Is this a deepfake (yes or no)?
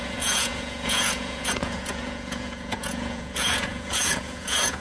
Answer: yes